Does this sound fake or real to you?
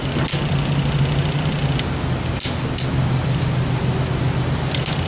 real